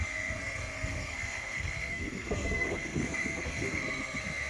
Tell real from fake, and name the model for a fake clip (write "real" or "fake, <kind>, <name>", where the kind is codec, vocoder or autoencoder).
fake, codec, SNAC